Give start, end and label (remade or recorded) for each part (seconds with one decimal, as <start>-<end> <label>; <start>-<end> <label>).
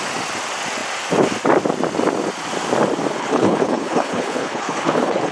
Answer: 0.0-3.2 recorded; 3.2-5.3 remade